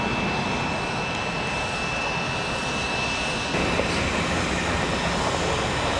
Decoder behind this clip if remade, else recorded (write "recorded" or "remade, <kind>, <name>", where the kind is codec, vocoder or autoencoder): recorded